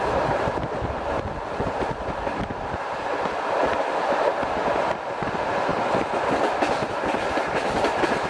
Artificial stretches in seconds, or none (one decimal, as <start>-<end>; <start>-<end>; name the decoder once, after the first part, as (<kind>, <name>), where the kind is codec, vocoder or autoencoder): none